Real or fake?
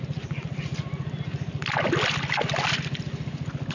real